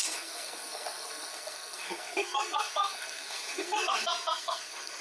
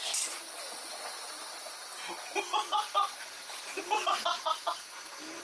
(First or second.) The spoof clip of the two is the first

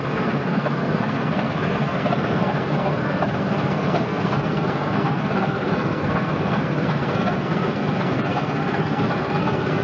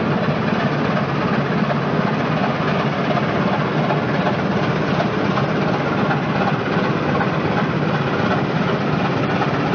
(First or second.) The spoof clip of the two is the first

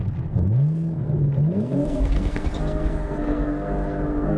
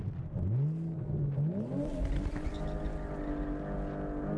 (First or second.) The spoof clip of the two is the first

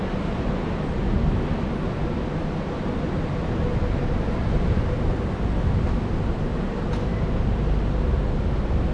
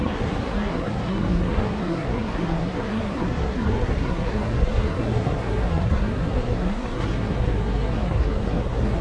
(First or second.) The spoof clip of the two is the second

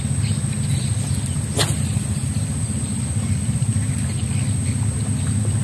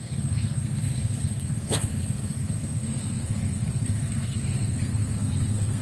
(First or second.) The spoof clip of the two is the second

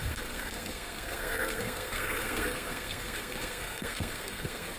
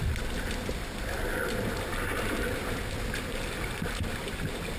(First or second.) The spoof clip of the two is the first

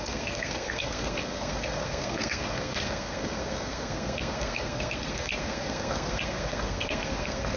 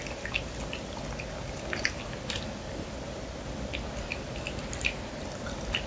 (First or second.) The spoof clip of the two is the first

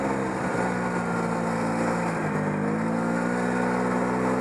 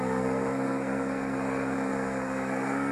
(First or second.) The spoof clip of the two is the second